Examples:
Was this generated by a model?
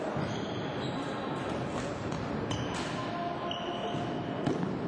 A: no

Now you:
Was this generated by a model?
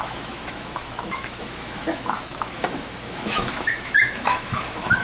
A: yes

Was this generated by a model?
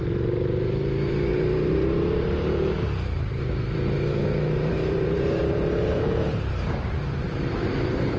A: yes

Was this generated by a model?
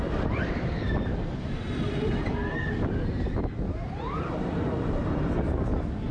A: yes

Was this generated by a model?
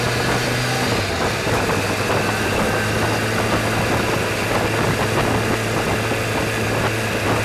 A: no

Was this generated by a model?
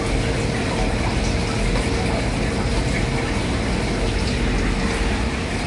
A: no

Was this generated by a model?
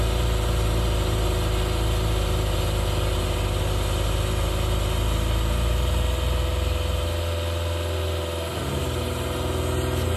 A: no